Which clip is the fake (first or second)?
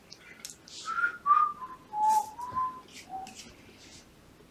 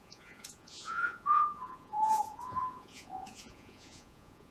second